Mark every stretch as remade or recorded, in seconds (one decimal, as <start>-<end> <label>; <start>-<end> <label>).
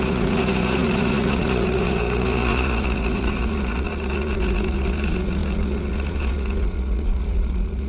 0.0-7.9 remade